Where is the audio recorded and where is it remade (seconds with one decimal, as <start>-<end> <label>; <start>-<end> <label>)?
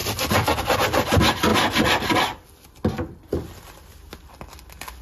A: 0.0-5.0 recorded